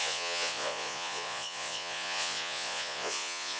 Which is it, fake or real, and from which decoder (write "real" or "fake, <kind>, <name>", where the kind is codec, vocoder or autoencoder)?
fake, vocoder, Vocos